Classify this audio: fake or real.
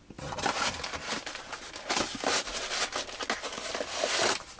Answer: real